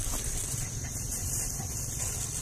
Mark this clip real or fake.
real